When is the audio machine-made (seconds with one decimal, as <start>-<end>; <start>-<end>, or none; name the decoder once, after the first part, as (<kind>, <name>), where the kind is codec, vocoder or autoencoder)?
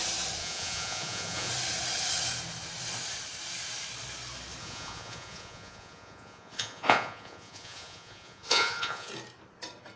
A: 0.4-1.5 (vocoder, Vocos); 4.6-9.1